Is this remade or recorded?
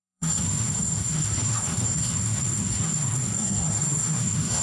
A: remade